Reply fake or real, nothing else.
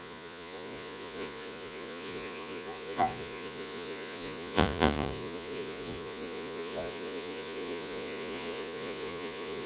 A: fake